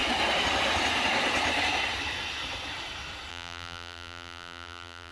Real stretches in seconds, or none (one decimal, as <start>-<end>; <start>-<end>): 0.0-3.3